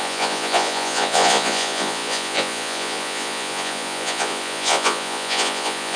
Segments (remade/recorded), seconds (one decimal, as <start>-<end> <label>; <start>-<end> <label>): 0.0-6.0 remade